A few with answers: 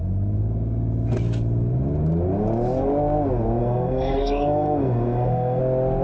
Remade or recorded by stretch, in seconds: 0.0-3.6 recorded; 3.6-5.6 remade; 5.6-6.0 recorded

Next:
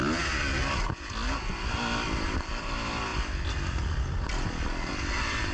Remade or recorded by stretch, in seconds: 0.0-5.5 recorded